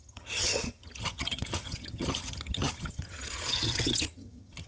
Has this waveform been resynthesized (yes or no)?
yes